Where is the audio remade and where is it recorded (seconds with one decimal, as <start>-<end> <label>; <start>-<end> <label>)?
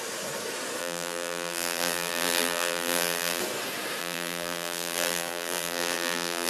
0.0-0.8 recorded; 0.8-3.4 remade; 3.4-4.0 recorded; 4.0-6.5 remade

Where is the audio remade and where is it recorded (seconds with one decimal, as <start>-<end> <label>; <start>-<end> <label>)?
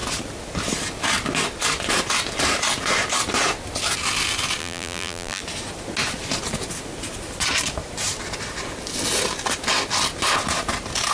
0.0-4.6 recorded; 4.6-5.4 remade; 5.4-11.1 recorded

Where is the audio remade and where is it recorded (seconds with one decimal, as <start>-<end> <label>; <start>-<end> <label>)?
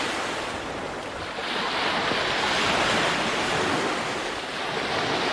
0.0-5.3 recorded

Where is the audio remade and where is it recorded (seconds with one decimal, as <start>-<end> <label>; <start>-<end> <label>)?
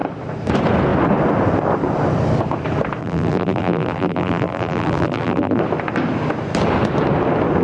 0.0-3.0 recorded; 3.0-5.6 remade; 5.6-7.6 recorded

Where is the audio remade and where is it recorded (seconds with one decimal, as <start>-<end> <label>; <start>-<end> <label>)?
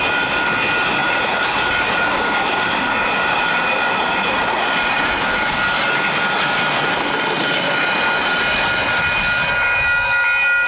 0.0-1.0 recorded; 1.0-5.1 remade; 5.1-10.7 recorded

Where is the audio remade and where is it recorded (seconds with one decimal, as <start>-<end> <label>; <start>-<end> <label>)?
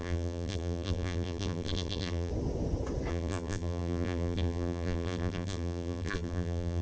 0.0-2.3 remade; 2.3-3.1 recorded; 3.1-6.8 remade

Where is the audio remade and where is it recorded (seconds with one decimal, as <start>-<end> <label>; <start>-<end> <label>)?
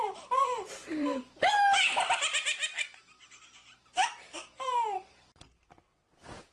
0.0-6.5 remade